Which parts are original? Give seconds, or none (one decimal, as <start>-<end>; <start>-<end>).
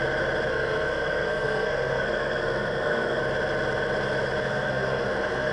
0.0-0.5; 3.2-4.4